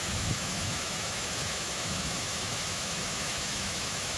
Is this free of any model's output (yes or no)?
no